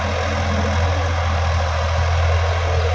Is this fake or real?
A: real